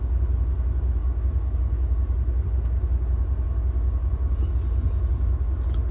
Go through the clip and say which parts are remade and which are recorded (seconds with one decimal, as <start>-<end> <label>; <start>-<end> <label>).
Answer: 0.0-5.9 recorded